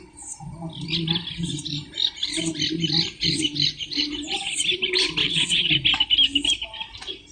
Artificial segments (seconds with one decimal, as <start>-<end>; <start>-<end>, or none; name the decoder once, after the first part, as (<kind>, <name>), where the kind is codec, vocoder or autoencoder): 5.2-5.7 (vocoder, WaveNeXt)